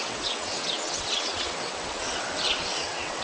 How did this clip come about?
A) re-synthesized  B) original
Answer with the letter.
A